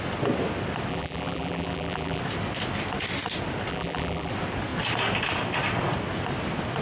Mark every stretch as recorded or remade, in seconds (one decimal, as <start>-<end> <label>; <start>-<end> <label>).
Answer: 0.0-0.9 recorded; 0.9-2.2 remade; 2.2-3.7 recorded; 3.7-4.3 remade; 4.3-6.8 recorded